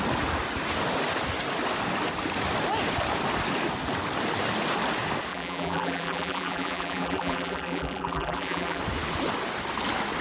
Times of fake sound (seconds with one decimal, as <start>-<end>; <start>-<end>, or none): 5.3-8.8